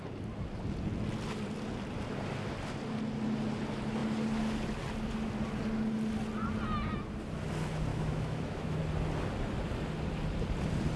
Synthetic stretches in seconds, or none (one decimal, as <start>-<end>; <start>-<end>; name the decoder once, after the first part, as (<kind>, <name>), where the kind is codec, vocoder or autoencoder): 7.9-8.8 (autoencoder, DAC-VAE)